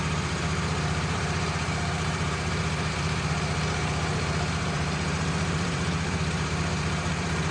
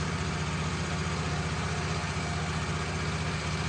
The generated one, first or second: first